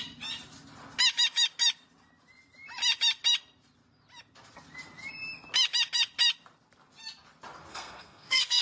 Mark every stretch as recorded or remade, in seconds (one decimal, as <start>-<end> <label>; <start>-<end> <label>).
0.0-7.7 recorded; 7.7-8.6 remade